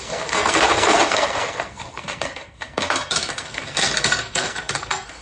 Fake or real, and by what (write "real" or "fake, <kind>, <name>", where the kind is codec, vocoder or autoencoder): fake, codec, SNAC